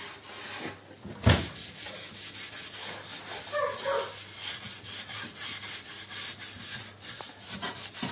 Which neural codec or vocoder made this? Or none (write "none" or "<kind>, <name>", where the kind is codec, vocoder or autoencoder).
none